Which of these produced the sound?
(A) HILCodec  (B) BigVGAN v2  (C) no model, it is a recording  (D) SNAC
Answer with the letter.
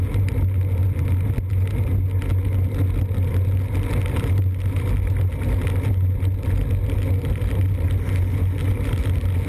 C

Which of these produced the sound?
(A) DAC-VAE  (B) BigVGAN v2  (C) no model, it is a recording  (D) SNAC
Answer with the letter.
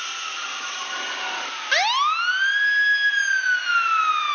C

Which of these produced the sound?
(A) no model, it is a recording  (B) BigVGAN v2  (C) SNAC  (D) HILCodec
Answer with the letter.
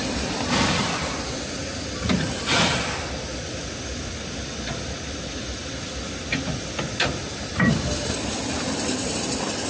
B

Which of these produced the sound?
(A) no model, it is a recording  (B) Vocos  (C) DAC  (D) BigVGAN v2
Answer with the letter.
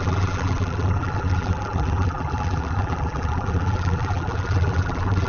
D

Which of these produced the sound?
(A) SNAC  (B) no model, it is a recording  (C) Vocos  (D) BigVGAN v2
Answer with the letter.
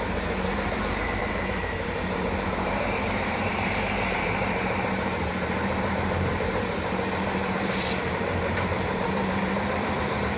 D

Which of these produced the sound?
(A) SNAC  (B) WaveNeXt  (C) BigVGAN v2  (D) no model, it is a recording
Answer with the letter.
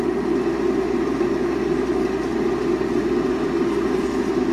D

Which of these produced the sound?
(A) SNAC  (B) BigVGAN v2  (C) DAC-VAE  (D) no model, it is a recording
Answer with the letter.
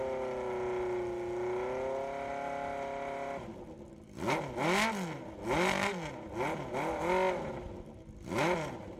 D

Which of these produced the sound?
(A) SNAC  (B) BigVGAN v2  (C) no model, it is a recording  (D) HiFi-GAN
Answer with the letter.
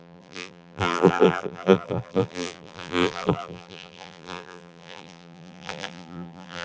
B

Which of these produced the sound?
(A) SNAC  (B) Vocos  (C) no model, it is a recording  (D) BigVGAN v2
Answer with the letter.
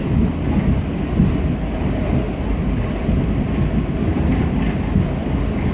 C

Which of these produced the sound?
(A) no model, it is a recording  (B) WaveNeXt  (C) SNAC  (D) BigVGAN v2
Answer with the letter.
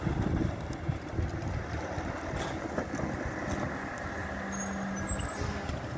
A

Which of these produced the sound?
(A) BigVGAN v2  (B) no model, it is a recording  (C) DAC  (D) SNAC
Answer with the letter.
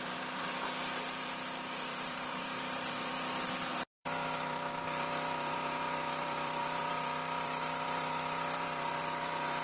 A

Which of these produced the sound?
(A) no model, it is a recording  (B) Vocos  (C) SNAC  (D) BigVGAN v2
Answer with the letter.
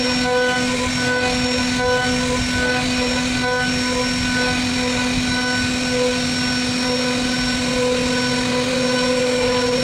A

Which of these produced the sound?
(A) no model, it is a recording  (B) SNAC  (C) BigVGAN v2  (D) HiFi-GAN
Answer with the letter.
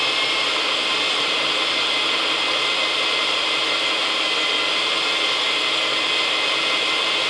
A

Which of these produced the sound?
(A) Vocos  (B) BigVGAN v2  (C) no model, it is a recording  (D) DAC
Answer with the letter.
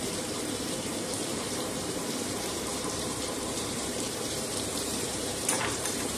B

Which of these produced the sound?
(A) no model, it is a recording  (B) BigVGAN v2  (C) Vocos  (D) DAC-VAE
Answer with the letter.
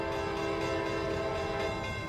A